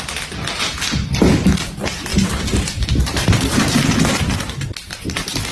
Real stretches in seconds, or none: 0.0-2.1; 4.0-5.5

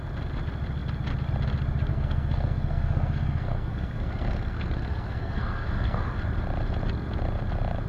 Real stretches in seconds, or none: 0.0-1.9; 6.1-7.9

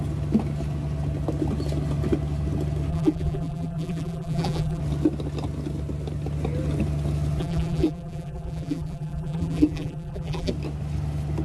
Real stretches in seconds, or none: 0.0-2.9; 4.8-7.4; 10.5-11.4